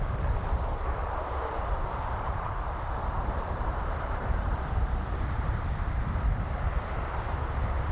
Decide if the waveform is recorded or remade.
remade